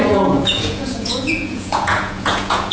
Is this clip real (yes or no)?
no